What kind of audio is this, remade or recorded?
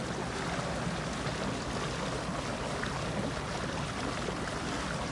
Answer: recorded